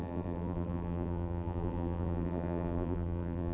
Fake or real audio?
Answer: fake